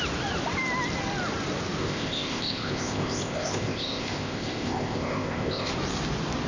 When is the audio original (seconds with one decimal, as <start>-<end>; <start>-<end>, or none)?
0.0-1.8; 5.7-6.5